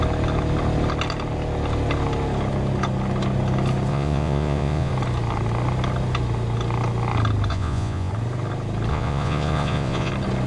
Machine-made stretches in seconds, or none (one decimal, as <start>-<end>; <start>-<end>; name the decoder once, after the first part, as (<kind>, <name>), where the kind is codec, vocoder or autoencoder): 3.9-4.9 (vocoder, Vocos); 7.5-8.1; 8.9-10.1